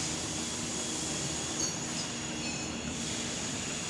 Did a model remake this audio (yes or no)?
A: no